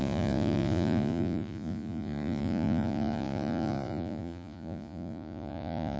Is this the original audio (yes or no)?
no